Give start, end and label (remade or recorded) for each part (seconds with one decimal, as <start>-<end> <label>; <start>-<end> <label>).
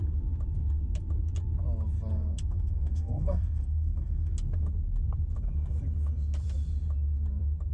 0.0-2.1 recorded; 2.1-4.3 remade; 4.3-7.7 recorded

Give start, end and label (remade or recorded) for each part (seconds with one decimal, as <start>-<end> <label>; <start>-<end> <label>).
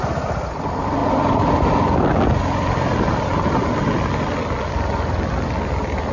0.0-6.1 recorded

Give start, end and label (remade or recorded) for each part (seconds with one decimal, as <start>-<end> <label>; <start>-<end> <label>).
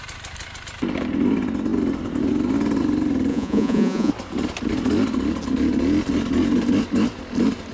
0.0-3.3 recorded; 3.3-4.1 remade; 4.1-7.7 recorded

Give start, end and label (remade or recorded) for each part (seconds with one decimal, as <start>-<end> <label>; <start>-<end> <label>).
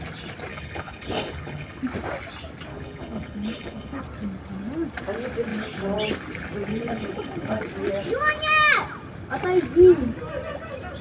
0.0-0.5 recorded; 0.5-1.8 remade; 1.8-2.7 recorded; 2.7-4.0 remade; 4.0-6.7 recorded; 6.7-7.6 remade; 7.6-11.0 recorded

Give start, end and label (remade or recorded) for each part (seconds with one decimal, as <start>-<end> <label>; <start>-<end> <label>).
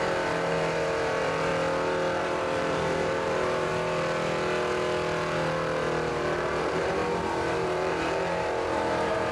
0.0-1.5 remade; 1.5-2.2 recorded; 2.2-3.7 remade; 3.7-6.1 recorded; 6.1-7.0 remade; 7.0-7.5 recorded; 7.5-9.3 remade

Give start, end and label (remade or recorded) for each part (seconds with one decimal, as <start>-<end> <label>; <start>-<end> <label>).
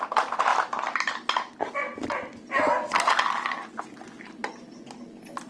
0.0-5.5 recorded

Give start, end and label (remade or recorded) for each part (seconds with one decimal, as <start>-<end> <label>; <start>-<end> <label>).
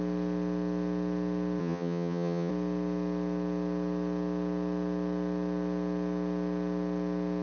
0.0-1.6 recorded; 1.6-2.5 remade; 2.5-7.4 recorded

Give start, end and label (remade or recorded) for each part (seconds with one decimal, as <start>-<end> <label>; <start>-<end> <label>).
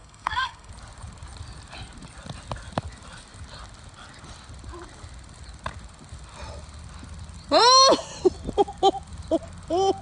0.0-0.7 remade; 0.7-10.0 recorded